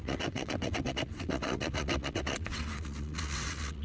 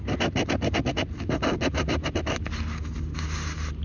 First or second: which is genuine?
second